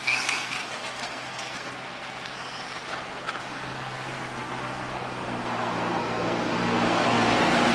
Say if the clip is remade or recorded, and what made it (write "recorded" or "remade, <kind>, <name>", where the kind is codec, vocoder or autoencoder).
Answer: remade, codec, SNAC